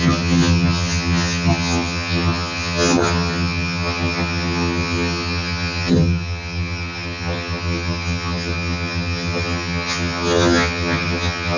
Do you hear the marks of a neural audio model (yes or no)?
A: yes